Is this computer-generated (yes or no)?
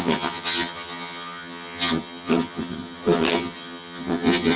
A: yes